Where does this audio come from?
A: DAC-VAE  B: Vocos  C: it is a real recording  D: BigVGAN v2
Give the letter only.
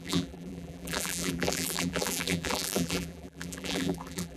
D